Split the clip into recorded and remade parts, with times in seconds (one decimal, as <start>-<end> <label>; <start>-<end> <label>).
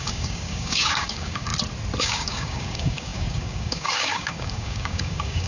0.0-1.5 remade; 1.5-2.0 recorded; 2.0-5.5 remade